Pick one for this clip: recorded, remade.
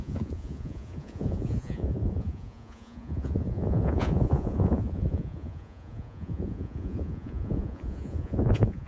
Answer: remade